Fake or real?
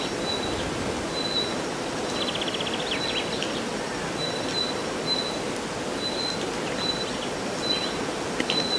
real